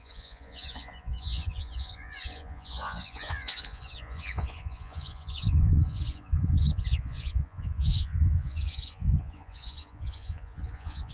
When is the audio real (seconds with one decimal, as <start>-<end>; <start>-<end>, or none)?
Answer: none